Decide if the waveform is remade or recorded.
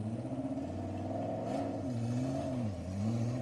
recorded